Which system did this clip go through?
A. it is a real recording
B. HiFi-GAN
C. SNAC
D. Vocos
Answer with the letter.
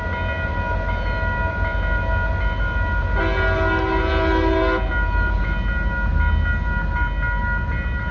A